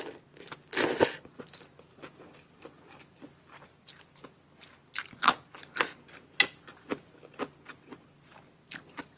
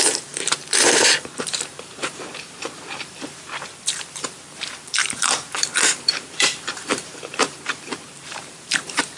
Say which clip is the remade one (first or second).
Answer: second